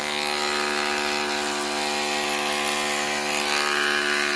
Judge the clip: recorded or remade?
recorded